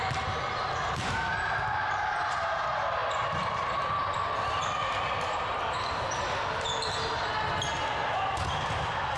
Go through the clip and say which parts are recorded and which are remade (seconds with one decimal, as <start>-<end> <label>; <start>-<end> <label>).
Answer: 0.0-9.2 recorded